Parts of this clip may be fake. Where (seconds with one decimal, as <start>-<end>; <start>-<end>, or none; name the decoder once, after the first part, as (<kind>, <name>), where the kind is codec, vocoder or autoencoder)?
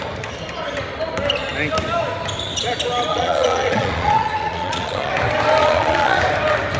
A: 3.1-5.1 (vocoder, Vocos); 5.6-6.2